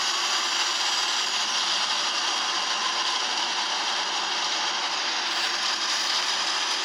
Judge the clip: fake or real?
real